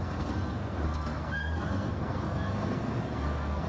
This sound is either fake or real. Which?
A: fake